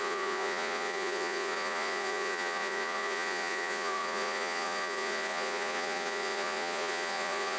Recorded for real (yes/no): no